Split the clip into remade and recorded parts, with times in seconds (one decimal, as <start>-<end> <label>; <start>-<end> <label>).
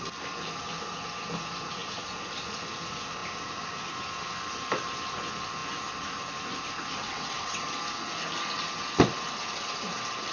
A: 0.0-7.0 recorded; 7.0-7.6 remade; 7.6-10.3 recorded